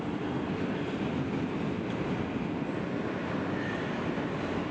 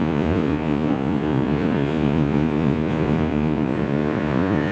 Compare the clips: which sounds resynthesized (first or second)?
second